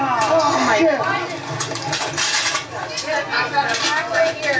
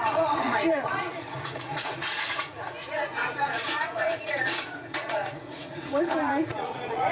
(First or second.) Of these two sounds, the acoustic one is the first